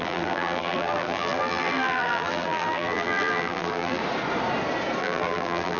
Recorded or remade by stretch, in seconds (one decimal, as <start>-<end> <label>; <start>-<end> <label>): 0.0-4.0 remade; 4.0-5.0 recorded; 5.0-5.8 remade